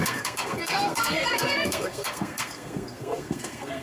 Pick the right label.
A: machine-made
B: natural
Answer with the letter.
A